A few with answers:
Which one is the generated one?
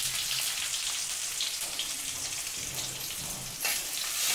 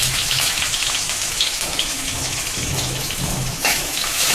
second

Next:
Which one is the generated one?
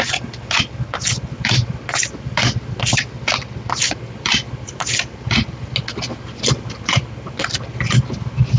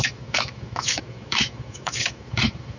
second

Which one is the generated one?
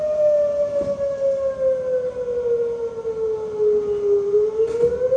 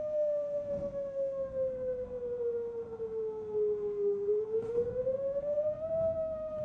second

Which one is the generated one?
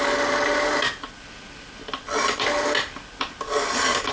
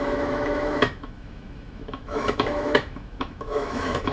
second